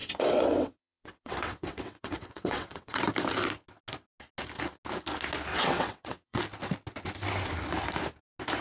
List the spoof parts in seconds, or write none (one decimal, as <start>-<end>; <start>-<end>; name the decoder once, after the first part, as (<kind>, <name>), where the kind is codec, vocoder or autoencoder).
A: 0.0-3.1 (vocoder, WaveNeXt); 5.5-6.4